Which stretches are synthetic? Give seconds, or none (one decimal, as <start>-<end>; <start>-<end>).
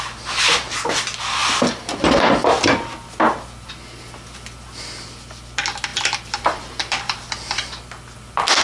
1.4-2.3; 5.9-7.8